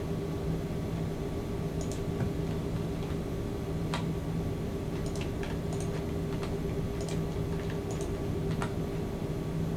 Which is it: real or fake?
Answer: real